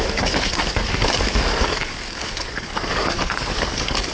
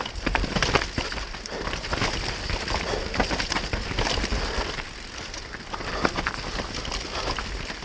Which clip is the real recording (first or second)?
second